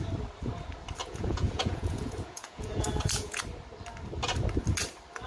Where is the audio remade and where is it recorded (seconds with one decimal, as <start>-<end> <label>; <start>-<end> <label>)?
0.0-1.0 recorded; 1.0-3.4 remade; 3.4-5.3 recorded